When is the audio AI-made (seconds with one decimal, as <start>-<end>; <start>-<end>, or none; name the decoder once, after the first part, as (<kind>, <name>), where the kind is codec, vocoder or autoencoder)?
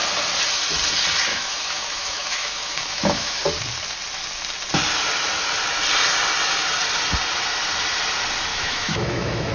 1.3-3.4 (autoencoder, DAC-VAE); 8.5-9.5